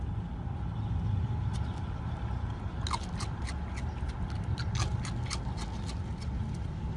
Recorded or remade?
recorded